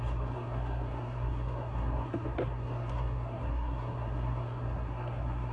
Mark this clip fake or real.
fake